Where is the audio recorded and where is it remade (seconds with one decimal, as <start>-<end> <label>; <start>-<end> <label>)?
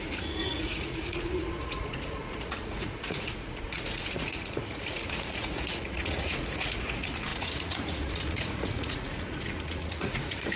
0.0-10.6 remade